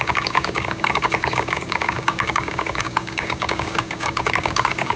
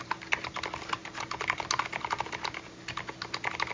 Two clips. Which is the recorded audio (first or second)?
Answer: second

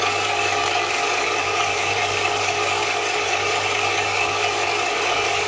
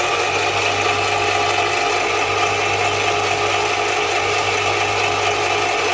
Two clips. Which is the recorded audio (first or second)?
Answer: second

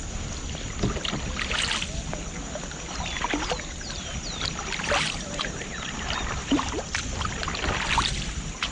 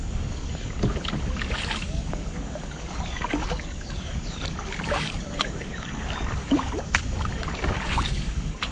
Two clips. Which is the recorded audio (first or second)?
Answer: first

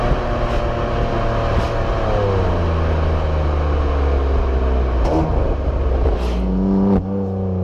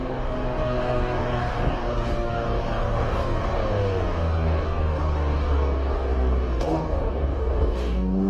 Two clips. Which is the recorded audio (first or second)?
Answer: first